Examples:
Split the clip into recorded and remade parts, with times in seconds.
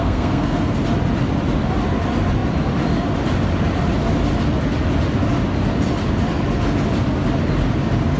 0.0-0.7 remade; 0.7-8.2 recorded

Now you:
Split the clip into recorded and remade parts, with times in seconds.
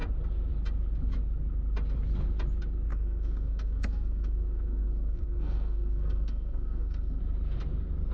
0.0-2.9 recorded; 2.9-7.2 remade; 7.2-8.1 recorded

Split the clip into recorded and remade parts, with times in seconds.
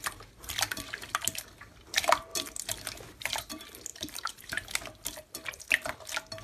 0.0-3.9 recorded; 3.9-4.7 remade; 4.7-6.4 recorded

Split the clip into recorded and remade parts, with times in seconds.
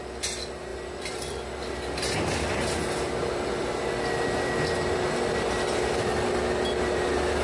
0.0-0.7 recorded; 0.7-1.6 remade; 1.6-3.2 recorded; 3.2-3.8 remade; 3.8-7.4 recorded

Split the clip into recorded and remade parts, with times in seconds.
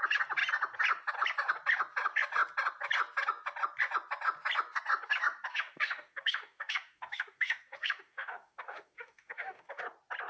0.0-5.5 recorded; 5.5-9.8 remade; 9.8-10.3 recorded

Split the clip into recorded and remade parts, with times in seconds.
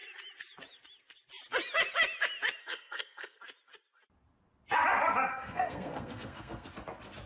0.0-2.6 recorded; 2.6-3.4 remade; 3.4-5.3 recorded; 5.3-6.7 remade; 6.7-7.3 recorded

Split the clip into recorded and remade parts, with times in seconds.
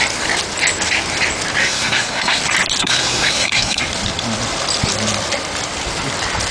0.0-1.6 recorded; 1.6-2.4 remade; 2.4-2.8 recorded; 2.8-3.8 remade; 3.8-6.5 recorded